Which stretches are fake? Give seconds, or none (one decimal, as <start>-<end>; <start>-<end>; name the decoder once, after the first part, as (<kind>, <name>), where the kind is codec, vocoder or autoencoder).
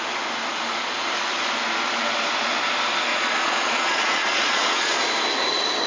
3.1-5.0 (vocoder, Vocos)